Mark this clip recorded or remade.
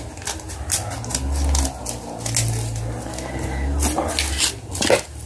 recorded